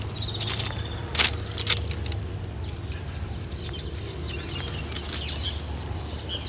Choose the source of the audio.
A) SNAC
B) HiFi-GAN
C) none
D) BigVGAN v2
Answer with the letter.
C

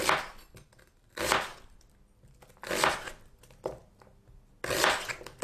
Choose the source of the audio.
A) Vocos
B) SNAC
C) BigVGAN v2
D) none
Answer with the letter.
D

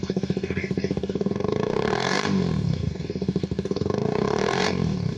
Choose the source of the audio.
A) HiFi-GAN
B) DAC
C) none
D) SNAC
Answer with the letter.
B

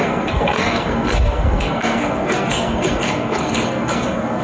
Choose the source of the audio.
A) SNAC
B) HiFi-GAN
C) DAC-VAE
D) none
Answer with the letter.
A